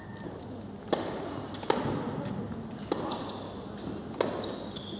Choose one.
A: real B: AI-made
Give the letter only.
A